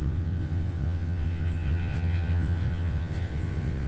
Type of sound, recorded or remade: remade